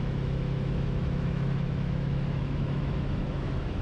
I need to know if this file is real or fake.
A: fake